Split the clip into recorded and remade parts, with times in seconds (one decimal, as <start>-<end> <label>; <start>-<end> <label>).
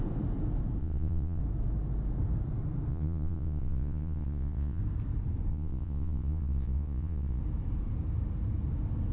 0.0-0.8 recorded; 0.8-1.4 remade; 1.4-2.9 recorded; 2.9-4.8 remade; 4.8-5.5 recorded; 5.5-7.4 remade; 7.4-9.1 recorded